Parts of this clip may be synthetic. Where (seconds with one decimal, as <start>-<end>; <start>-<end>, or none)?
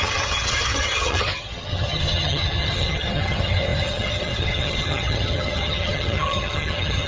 0.0-7.1